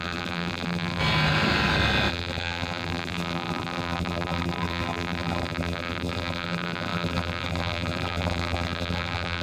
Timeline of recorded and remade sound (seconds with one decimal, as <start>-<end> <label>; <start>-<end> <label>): 0.0-1.0 remade; 1.0-2.1 recorded; 2.1-9.4 remade